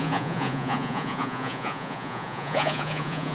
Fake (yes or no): yes